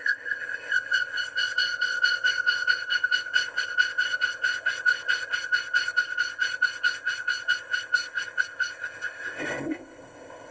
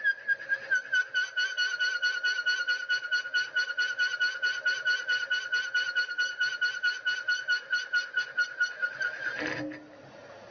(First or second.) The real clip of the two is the second